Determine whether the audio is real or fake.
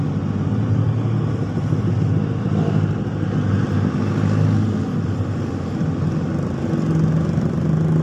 real